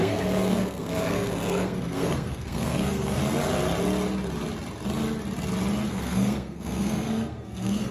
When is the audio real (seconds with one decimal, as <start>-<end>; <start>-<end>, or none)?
3.2-5.9

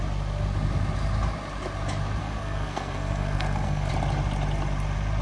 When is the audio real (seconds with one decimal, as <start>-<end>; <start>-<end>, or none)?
0.0-2.2; 3.9-5.2

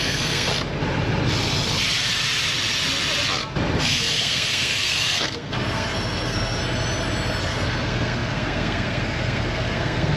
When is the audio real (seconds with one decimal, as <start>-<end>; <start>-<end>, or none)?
0.5-3.8; 6.6-7.4

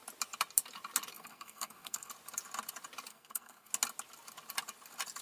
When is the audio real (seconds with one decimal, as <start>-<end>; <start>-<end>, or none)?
0.0-1.1; 2.1-3.1; 3.7-5.2

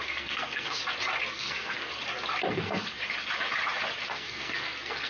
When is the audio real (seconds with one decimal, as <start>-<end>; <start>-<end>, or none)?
0.8-1.3; 1.9-2.5; 3.0-4.1

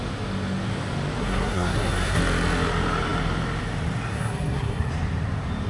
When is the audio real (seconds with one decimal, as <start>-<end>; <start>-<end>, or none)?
0.0-1.2; 2.2-4.1; 4.9-5.7